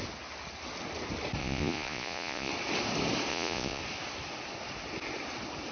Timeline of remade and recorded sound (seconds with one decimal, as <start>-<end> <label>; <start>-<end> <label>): 0.0-1.4 recorded; 1.4-2.5 remade; 2.5-3.3 recorded; 3.3-3.8 remade; 3.8-5.7 recorded